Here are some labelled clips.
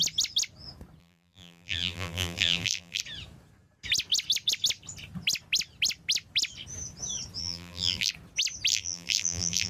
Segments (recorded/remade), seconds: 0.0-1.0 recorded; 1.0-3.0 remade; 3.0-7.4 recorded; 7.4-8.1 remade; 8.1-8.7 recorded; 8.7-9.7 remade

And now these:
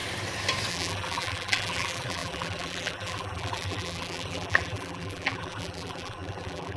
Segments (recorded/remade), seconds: 0.0-0.7 recorded; 0.7-6.8 remade